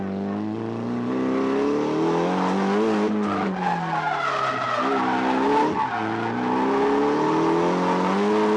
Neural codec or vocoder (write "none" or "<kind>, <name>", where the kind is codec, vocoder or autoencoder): none